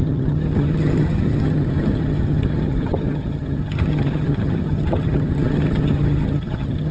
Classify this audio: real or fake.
fake